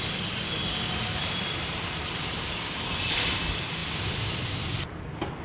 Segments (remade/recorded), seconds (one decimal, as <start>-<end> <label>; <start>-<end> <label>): 0.0-1.2 recorded; 1.2-3.4 remade; 3.4-5.4 recorded

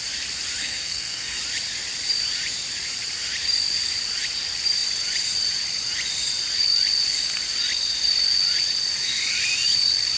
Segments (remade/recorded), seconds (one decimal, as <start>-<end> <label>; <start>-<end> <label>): 0.0-0.6 recorded; 0.6-1.4 remade; 1.4-10.2 recorded

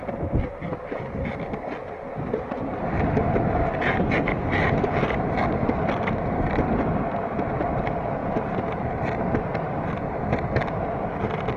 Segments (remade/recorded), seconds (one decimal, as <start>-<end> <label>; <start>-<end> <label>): 0.0-8.2 remade; 8.2-9.4 recorded; 9.4-11.6 remade

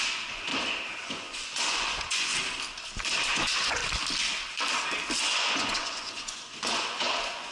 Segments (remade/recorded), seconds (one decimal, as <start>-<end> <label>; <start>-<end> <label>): 0.0-0.5 remade; 0.5-1.1 recorded; 1.1-2.3 remade; 2.3-3.2 recorded; 3.2-3.8 remade; 3.8-5.2 recorded; 5.2-7.5 remade

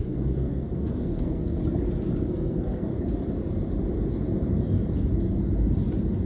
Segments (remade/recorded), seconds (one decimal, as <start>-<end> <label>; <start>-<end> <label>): 0.0-1.6 remade; 1.6-2.2 recorded; 2.2-2.9 remade; 2.9-6.3 recorded